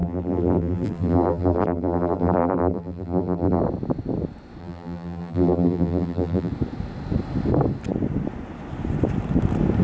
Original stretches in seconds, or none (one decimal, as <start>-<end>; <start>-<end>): 3.6-4.6; 6.5-9.8